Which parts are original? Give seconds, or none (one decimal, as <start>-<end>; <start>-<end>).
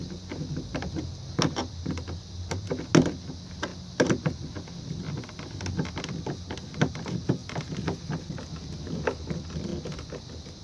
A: 0.0-10.6